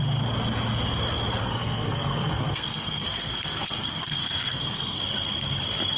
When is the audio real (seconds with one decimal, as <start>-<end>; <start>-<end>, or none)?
0.0-1.4; 5.0-6.0